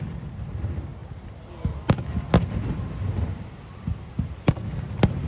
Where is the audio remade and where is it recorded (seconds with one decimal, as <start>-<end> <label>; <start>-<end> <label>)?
0.0-5.3 recorded